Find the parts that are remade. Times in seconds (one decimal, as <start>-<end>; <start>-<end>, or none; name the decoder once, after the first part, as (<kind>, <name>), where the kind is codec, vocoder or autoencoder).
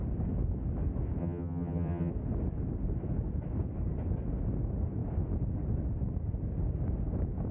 1.2-2.1 (vocoder, HiFi-GAN)